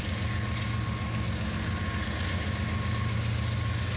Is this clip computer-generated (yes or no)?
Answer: no